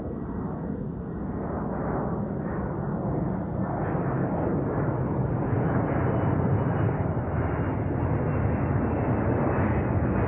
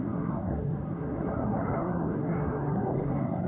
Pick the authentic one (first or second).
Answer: first